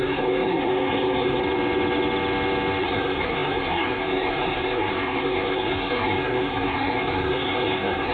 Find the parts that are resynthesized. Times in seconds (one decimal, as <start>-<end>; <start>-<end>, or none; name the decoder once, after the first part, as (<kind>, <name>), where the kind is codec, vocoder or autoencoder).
0.0-1.4 (codec, SNAC); 2.8-8.1